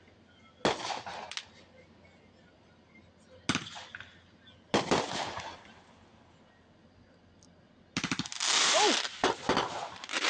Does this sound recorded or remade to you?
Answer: recorded